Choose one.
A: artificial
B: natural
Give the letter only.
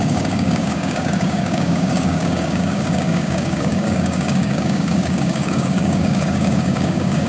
A